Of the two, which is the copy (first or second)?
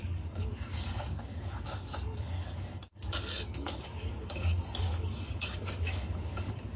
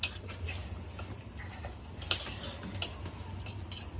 first